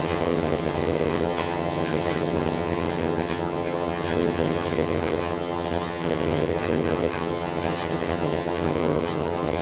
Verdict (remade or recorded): remade